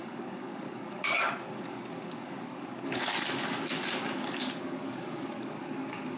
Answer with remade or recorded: remade